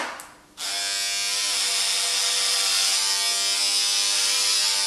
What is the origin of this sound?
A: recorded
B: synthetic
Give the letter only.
A